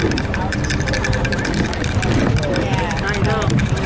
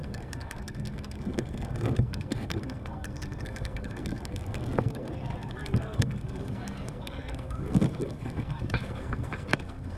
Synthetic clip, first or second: second